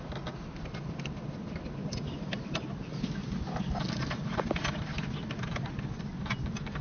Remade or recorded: recorded